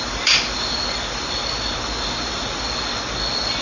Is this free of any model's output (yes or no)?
yes